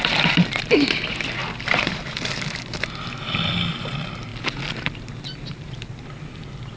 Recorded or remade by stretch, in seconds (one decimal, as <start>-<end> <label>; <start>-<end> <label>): 0.0-1.4 recorded; 1.4-2.8 remade; 2.8-5.4 recorded; 5.4-6.0 remade; 6.0-6.8 recorded